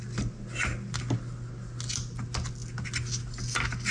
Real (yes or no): yes